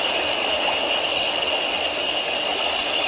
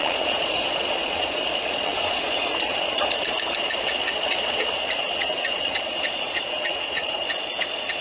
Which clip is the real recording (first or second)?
first